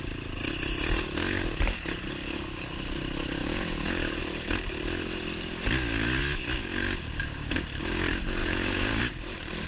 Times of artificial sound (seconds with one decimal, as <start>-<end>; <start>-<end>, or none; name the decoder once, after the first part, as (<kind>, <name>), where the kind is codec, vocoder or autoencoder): 3.4-4.2 (vocoder, Vocos); 8.4-9.0